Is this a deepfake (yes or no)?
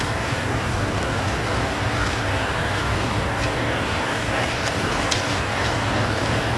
yes